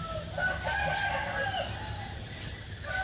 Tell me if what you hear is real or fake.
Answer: real